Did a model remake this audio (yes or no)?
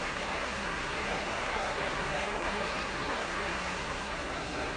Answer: yes